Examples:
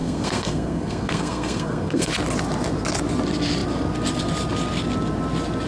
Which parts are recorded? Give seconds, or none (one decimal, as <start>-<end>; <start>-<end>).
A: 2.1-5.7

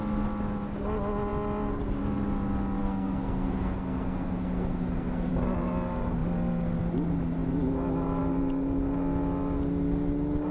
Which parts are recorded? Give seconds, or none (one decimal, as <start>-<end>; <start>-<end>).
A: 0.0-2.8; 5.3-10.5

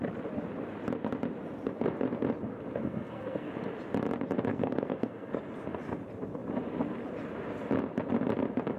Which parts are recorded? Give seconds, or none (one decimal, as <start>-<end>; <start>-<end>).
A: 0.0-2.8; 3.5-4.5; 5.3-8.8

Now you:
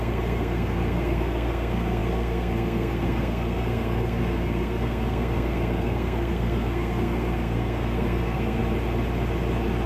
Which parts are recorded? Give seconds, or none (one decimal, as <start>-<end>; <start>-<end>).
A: 8.6-9.9

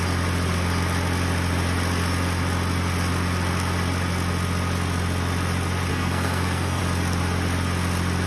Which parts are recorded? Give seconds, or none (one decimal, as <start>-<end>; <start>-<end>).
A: 0.0-5.9; 6.8-8.3

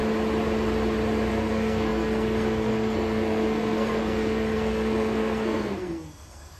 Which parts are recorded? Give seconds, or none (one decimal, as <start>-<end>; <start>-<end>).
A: 0.0-1.3